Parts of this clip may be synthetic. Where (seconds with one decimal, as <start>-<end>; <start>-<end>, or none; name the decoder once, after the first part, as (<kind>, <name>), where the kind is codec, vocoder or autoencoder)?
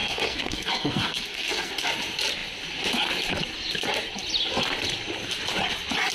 0.0-1.7 (codec, SNAC)